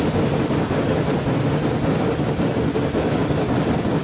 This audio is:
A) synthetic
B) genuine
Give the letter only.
B